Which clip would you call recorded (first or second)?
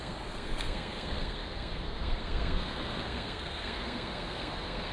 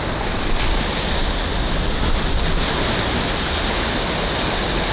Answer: second